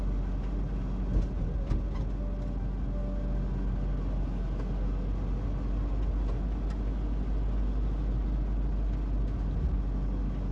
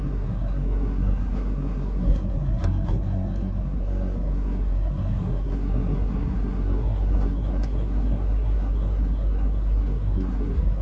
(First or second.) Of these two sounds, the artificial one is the second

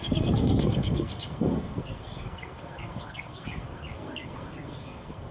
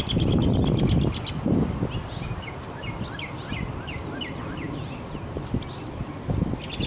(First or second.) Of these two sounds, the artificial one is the first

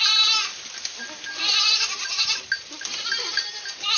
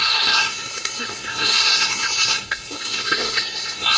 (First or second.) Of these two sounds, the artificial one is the second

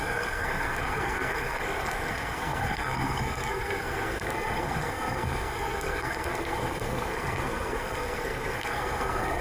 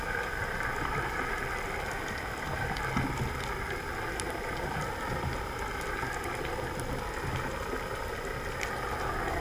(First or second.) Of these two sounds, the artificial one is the first